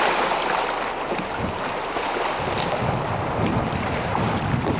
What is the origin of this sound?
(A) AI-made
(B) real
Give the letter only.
B